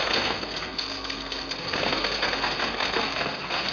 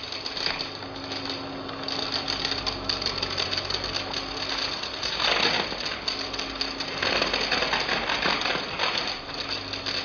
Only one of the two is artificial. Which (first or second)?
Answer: first